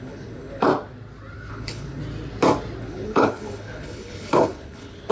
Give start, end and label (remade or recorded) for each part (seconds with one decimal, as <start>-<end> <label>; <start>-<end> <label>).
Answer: 0.0-0.7 remade; 0.7-1.5 recorded; 1.5-2.0 remade; 2.0-2.8 recorded; 2.8-5.1 remade